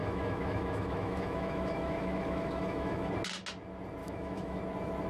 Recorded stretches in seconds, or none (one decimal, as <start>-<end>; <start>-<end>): 3.1-4.0; 4.6-5.1